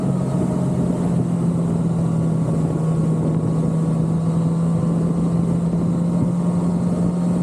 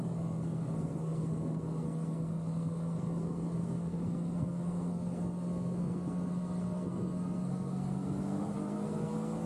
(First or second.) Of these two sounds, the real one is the first